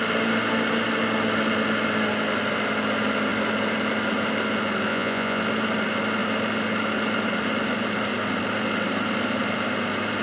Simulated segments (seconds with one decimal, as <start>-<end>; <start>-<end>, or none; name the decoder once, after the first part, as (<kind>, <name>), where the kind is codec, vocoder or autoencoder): 4.9-5.4 (vocoder, Vocos)